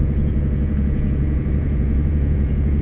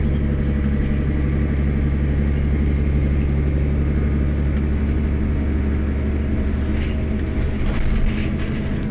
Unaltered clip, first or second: second